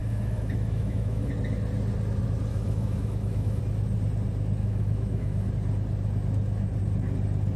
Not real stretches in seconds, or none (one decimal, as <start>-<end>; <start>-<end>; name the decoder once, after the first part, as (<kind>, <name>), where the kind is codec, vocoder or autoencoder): 0.0-1.3 (autoencoder, DAC-VAE); 2.5-3.6; 4.6-5.5